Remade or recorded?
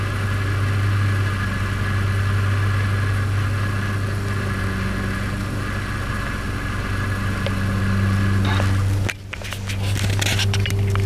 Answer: recorded